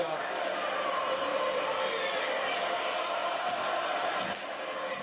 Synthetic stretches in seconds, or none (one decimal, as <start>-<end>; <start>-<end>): 1.3-1.9